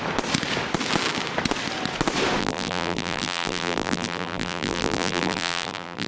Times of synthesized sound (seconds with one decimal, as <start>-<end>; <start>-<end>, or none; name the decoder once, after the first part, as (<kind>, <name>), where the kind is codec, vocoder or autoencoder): 2.4-6.1 (vocoder, BigVGAN v2)